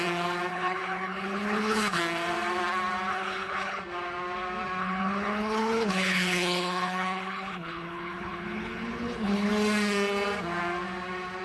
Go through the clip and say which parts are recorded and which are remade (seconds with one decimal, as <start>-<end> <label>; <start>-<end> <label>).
0.0-0.5 recorded; 0.5-2.0 remade; 2.0-3.1 recorded; 3.1-3.8 remade; 3.8-4.8 recorded; 4.8-9.5 remade; 9.5-11.4 recorded